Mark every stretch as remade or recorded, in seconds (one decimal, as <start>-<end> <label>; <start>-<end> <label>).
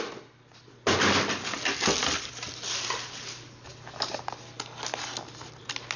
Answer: 0.0-6.0 recorded